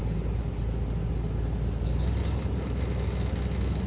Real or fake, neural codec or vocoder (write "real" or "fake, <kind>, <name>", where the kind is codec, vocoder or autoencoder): real